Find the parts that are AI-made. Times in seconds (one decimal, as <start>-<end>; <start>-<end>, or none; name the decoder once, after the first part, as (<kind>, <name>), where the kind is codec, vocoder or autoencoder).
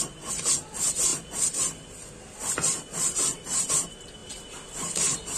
none